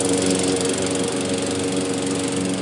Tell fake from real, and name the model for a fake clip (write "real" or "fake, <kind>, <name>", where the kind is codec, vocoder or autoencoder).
real